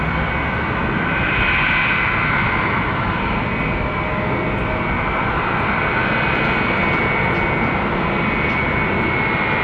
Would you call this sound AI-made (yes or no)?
no